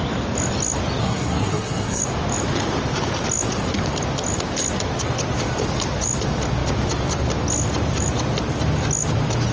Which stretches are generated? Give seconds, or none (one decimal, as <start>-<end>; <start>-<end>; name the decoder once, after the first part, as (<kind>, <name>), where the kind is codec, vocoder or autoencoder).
1.0-2.0 (codec, SNAC)

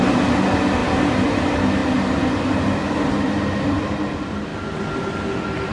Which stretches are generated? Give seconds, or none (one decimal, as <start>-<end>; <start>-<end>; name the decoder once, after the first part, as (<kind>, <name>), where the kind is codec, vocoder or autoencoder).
none

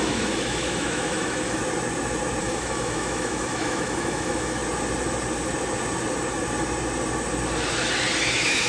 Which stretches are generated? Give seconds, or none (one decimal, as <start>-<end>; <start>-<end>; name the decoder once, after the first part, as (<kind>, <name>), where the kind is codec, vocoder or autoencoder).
0.0-1.6 (autoencoder, DAC-VAE); 2.4-4.6; 8.2-8.7

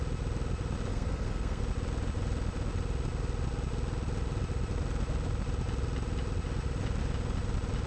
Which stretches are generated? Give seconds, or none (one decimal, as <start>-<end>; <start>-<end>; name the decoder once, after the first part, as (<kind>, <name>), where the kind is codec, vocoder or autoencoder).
0.9-1.6 (codec, SNAC)

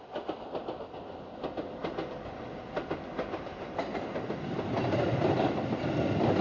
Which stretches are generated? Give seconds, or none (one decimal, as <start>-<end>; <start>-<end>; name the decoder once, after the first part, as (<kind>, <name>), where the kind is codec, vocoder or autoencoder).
3.9-5.9 (vocoder, BigVGAN v2)

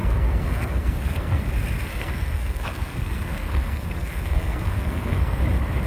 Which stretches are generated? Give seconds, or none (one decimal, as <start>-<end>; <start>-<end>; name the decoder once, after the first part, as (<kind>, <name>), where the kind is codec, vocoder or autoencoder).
0.0-1.4 (codec, SNAC); 1.9-5.4